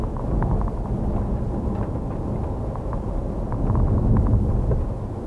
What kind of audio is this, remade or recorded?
recorded